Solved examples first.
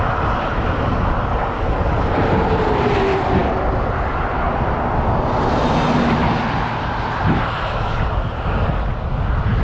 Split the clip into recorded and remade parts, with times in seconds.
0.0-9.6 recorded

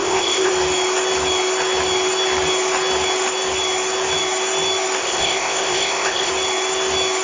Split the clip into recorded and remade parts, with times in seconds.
0.0-0.5 remade; 0.5-5.0 recorded; 5.0-6.3 remade; 6.3-7.2 recorded

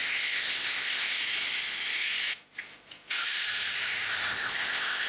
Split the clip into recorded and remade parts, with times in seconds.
0.0-1.2 remade; 1.2-4.3 recorded; 4.3-5.1 remade